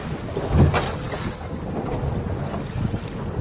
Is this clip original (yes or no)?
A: yes